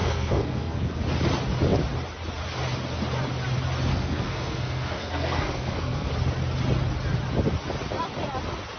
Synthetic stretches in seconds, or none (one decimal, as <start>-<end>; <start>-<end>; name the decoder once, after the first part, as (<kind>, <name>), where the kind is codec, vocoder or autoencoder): 0.0-1.0 (codec, SNAC); 3.9-6.1